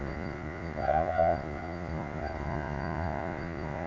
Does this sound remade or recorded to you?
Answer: remade